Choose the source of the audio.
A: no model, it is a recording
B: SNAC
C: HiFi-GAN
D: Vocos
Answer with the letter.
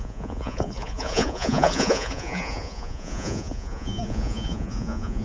D